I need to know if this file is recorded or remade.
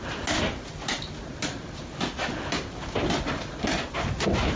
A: recorded